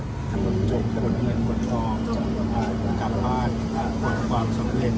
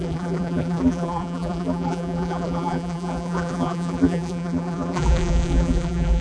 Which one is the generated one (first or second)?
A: second